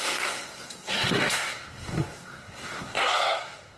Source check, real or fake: fake